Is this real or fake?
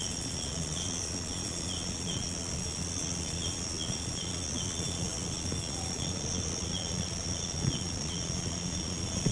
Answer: fake